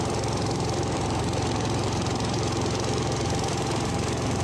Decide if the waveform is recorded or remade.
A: remade